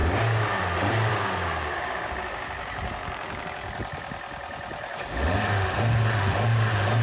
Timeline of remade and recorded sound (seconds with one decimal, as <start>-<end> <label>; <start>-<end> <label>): 0.0-0.6 remade; 0.6-1.1 recorded; 1.1-3.4 remade; 3.4-7.0 recorded